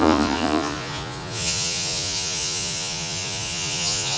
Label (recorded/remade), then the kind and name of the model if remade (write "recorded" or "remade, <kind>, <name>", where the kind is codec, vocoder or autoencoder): remade, vocoder, Vocos